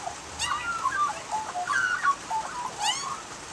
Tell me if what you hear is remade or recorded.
remade